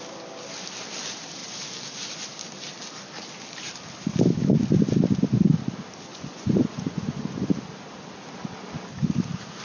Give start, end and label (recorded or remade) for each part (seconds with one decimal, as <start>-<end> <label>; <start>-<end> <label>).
0.0-6.1 recorded; 6.1-7.5 remade; 7.5-9.6 recorded